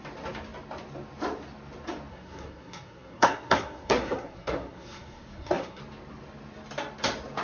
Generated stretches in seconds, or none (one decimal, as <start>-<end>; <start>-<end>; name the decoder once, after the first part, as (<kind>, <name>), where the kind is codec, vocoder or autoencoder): 2.1-5.8 (codec, SNAC)